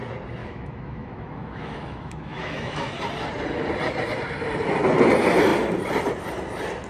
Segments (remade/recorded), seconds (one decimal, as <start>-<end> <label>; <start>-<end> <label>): 0.0-0.4 recorded; 0.4-2.9 remade; 2.9-6.9 recorded